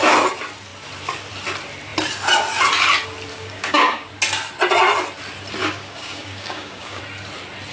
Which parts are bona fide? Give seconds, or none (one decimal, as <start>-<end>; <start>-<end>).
0.0-3.3; 4.1-5.6; 7.0-7.7